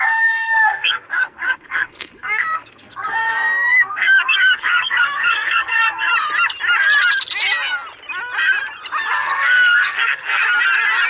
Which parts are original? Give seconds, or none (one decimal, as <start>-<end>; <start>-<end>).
6.1-9.2; 10.4-11.1